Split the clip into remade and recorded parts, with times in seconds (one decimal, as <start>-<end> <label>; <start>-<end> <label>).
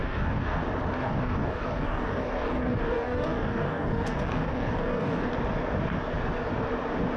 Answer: 0.0-0.6 remade; 0.6-1.0 recorded; 1.0-5.3 remade; 5.3-7.2 recorded